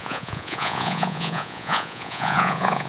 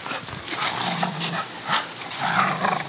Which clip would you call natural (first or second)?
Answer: second